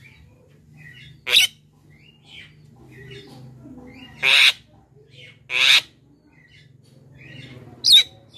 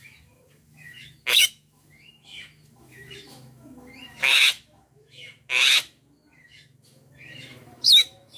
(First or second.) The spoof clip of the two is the second